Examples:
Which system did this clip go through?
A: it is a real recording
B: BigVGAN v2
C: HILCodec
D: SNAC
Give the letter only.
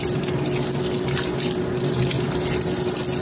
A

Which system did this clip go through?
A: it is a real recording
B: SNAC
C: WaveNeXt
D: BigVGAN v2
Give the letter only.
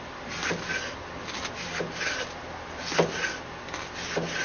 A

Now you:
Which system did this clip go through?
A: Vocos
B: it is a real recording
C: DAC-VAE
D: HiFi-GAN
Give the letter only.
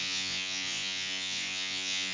A